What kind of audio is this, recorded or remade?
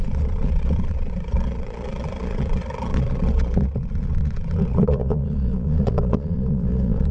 remade